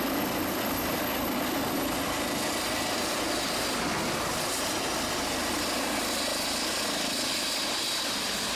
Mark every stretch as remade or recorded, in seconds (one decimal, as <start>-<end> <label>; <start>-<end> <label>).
0.0-8.6 recorded